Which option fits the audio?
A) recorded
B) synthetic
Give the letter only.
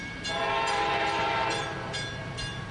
B